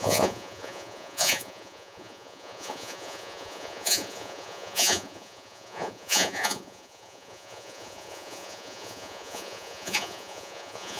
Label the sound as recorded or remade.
remade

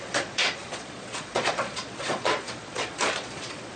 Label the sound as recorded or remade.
remade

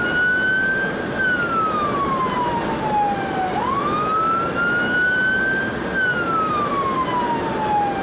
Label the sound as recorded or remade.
recorded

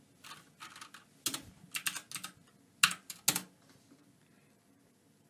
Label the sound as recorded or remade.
recorded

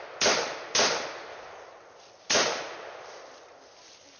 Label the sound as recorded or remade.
recorded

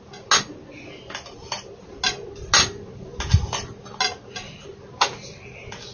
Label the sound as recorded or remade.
recorded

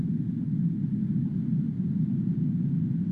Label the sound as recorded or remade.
recorded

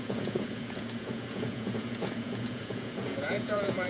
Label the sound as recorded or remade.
remade